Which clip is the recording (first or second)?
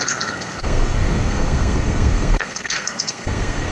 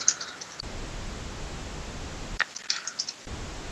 second